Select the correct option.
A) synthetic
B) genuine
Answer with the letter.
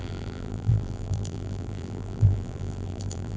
A